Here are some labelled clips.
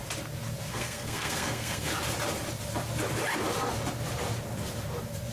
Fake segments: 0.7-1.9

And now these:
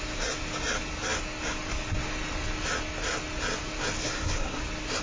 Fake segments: 4.0-4.6

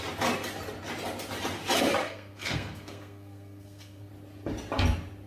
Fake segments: 2.0-4.1

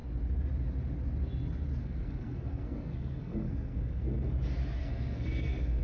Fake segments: 1.8-4.3; 4.8-5.8

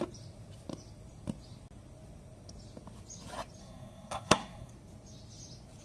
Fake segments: 3.6-4.7

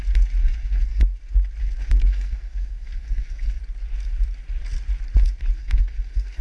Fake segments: 0.4-1.0; 1.6-3.6; 5.6-6.4